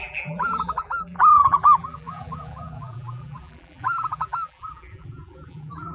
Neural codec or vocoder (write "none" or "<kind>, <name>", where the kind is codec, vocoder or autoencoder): vocoder, BigVGAN v2